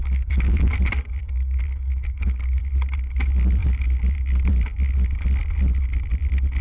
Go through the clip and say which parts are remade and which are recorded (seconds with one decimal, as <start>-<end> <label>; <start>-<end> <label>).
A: 0.0-0.7 remade; 0.7-1.2 recorded; 1.2-2.6 remade; 2.6-6.6 recorded